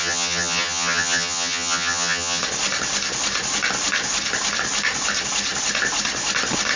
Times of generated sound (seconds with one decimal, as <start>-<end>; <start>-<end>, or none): 0.0-2.4